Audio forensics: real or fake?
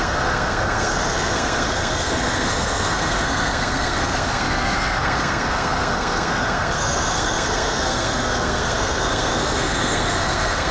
fake